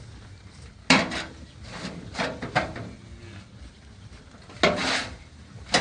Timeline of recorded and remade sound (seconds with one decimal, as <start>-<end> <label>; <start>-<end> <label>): 0.0-4.8 recorded; 4.8-5.8 remade